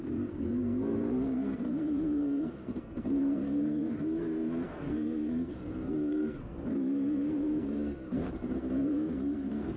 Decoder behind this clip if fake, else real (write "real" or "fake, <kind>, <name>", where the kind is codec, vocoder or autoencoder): fake, codec, SNAC